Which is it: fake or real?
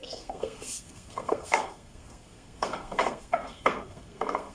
fake